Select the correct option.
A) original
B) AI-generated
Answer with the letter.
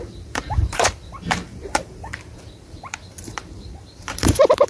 B